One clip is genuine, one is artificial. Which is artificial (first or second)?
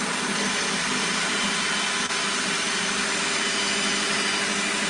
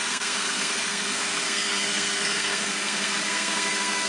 second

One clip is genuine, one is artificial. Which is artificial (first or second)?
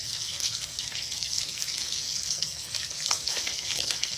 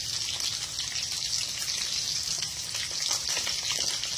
first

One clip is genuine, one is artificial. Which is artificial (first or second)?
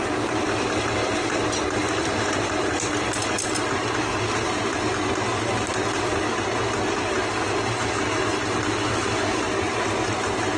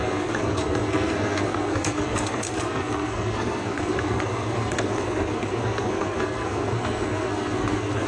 second